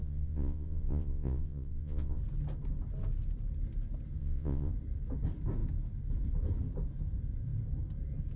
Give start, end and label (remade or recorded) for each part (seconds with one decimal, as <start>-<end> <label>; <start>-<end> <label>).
0.0-2.2 remade; 2.2-4.2 recorded; 4.2-4.7 remade; 4.7-8.4 recorded